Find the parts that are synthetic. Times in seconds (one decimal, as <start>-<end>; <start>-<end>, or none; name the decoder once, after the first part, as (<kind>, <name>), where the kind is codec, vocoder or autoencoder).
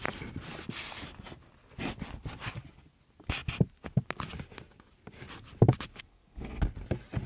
5.9-6.6 (codec, SNAC)